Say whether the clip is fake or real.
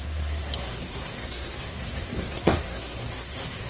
fake